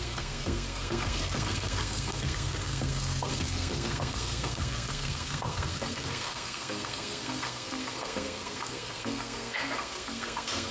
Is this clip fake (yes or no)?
yes